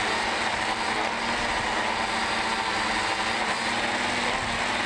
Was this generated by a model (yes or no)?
no